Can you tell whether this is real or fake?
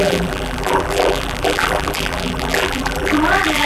fake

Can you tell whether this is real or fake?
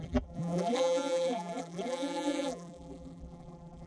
fake